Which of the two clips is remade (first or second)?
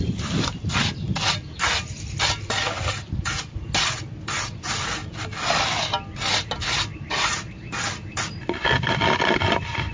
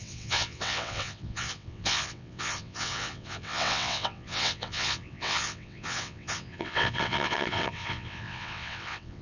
second